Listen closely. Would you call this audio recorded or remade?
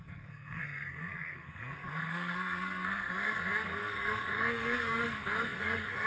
remade